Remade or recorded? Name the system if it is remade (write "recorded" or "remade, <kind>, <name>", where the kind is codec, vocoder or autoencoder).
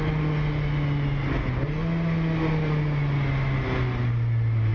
recorded